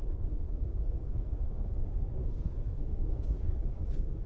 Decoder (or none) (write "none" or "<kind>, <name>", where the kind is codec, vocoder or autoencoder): codec, SNAC